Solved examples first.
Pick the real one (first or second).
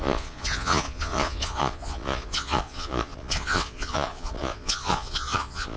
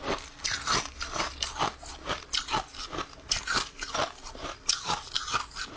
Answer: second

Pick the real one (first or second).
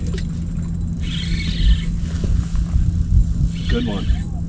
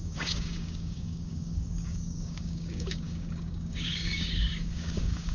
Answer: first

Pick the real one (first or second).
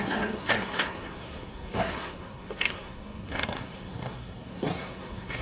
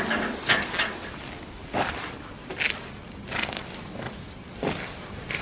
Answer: second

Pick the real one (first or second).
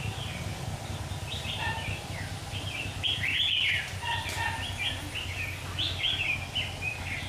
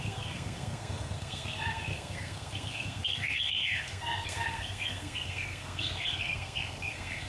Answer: first